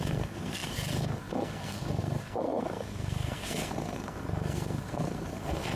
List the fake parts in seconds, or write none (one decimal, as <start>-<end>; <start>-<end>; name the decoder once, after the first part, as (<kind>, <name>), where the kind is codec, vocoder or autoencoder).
0.0-5.8 (codec, SNAC)